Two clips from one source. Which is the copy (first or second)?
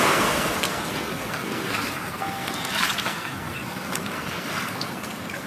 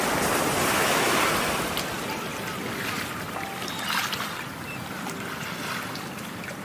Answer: first